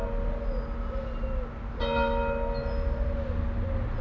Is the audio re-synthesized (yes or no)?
no